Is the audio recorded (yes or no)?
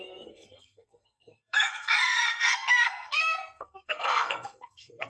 no